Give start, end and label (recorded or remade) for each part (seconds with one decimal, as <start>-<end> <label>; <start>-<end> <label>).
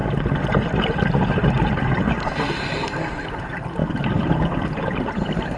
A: 0.0-3.8 recorded; 3.8-4.4 remade; 4.4-5.6 recorded